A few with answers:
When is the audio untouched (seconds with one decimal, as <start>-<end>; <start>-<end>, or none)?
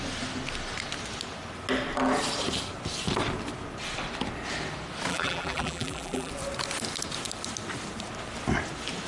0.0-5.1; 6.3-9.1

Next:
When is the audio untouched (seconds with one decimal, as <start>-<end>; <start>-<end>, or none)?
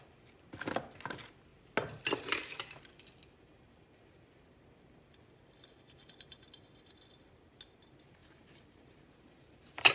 0.0-8.2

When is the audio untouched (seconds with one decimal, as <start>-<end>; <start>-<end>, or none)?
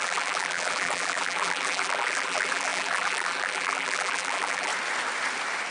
4.7-5.7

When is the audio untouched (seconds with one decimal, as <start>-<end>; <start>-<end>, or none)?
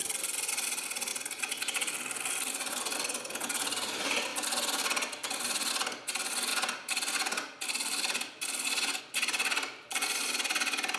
0.0-11.0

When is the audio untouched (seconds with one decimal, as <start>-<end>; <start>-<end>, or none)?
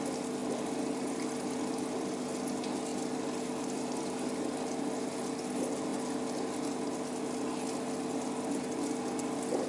0.0-0.4; 2.2-2.9; 5.3-9.7